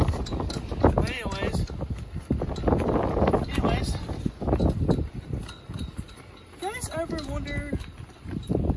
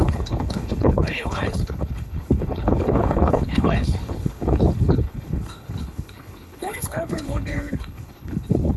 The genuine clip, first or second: first